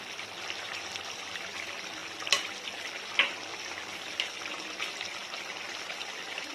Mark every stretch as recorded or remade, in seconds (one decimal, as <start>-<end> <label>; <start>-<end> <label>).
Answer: 0.0-2.0 remade; 2.0-3.1 recorded; 3.1-3.5 remade; 3.5-4.3 recorded; 4.3-6.5 remade